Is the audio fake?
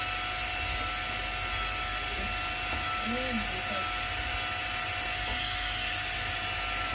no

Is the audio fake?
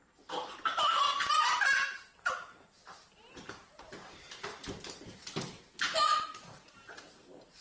yes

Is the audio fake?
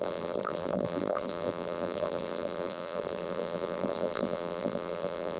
yes